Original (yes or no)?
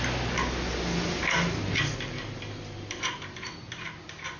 yes